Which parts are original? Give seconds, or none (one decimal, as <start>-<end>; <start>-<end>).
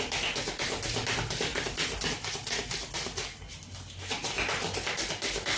0.0-5.6